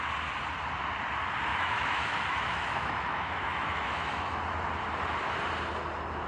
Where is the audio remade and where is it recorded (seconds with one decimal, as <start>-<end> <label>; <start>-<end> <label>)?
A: 0.0-1.5 recorded; 1.5-4.4 remade; 4.4-6.3 recorded